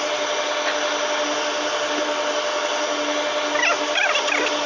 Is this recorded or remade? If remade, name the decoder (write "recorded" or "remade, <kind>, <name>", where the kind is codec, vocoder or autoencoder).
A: recorded